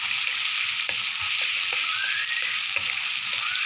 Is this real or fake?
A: real